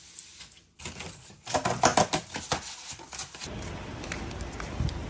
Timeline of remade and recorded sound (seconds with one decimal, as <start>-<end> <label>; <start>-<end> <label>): 0.0-5.1 recorded